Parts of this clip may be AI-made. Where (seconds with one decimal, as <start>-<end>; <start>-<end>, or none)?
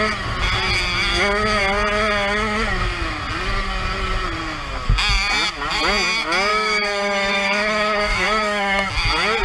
6.5-8.9